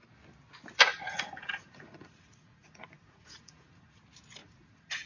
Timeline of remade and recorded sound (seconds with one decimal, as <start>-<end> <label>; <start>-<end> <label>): 0.0-0.9 recorded; 0.9-4.0 remade; 4.0-4.4 recorded; 4.4-5.1 remade